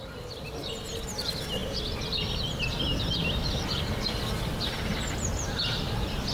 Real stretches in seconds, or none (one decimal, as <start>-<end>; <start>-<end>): 0.0-6.3